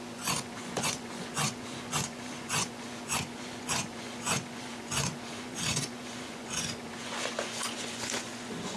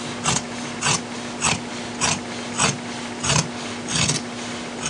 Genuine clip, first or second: second